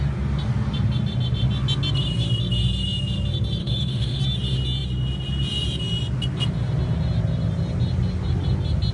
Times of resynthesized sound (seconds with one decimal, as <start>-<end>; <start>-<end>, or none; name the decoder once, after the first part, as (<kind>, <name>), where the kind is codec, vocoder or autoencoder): 3.6-4.2 (autoencoder, DAC-VAE)